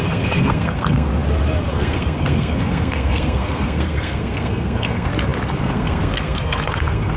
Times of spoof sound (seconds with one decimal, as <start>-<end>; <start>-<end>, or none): 0.0-1.1; 1.7-5.1; 5.6-7.2